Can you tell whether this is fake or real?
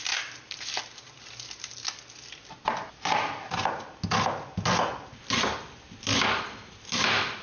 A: real